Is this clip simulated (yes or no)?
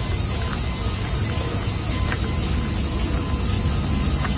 no